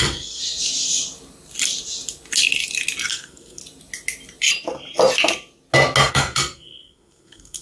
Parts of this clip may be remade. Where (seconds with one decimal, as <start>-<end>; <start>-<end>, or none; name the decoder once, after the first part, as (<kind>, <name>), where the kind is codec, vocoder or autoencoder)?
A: 0.0-0.4 (codec, SNAC); 3.1-3.6; 6.1-7.6